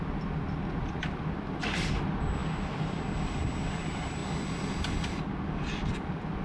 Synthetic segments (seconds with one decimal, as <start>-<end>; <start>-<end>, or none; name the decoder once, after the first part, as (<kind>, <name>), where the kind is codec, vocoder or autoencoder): none